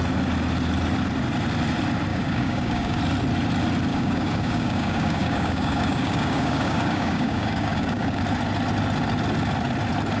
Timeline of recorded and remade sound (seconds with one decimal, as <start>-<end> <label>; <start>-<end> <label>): 0.0-2.1 recorded; 2.1-3.0 remade; 3.0-3.9 recorded; 3.9-8.2 remade; 8.2-10.2 recorded